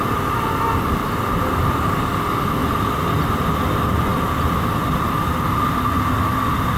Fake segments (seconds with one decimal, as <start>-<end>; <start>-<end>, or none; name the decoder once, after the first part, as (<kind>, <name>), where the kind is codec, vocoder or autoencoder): none